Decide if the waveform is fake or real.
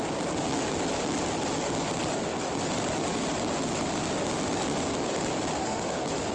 real